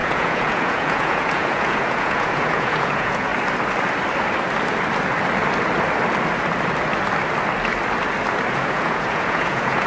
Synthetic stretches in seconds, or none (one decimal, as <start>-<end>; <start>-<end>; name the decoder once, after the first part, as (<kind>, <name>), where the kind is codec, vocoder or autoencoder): 0.0-3.3 (vocoder, Vocos); 8.5-9.9